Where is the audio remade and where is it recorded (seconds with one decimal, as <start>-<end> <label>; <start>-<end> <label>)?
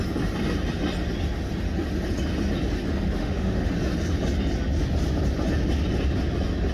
0.0-3.2 recorded; 3.2-3.7 remade; 3.7-6.7 recorded